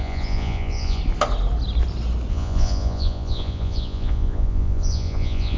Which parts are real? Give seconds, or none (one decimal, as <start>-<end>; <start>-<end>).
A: 1.0-2.3